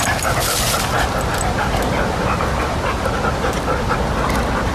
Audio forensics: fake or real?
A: real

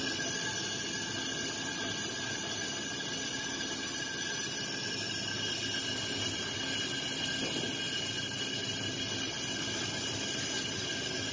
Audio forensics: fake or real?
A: real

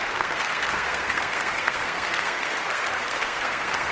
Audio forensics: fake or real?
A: fake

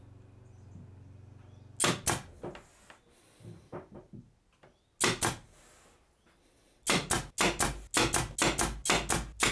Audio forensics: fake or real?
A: real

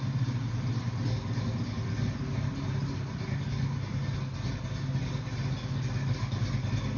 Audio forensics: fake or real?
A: real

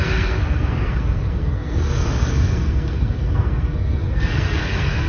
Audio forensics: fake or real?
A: fake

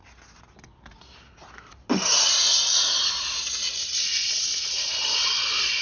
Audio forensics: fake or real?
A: real